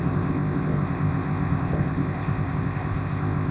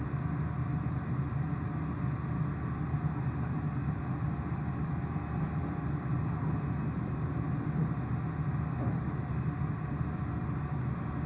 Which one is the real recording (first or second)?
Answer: second